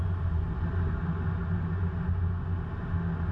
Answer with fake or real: real